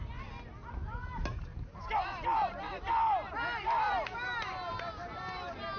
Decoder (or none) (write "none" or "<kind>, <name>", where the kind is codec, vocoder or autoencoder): none